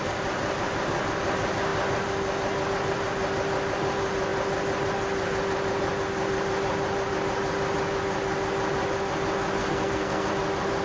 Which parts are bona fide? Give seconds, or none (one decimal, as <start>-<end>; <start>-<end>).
0.0-9.6; 10.3-10.8